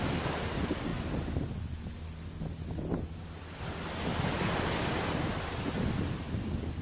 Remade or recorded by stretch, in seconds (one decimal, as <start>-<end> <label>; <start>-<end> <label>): 0.0-6.8 recorded